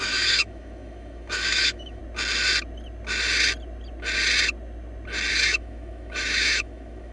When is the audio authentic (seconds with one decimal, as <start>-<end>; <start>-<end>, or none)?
2.0-5.3